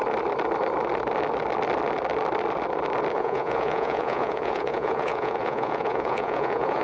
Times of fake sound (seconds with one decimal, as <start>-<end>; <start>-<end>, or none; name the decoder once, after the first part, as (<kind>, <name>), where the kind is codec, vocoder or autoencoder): 3.1-6.8 (vocoder, Vocos)